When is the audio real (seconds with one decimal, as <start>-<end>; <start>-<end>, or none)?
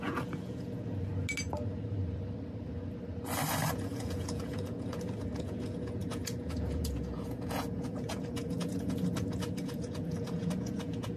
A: 1.1-3.7